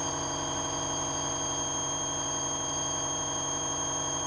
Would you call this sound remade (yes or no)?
no